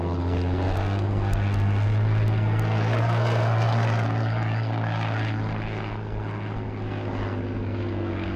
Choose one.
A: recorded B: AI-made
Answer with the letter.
B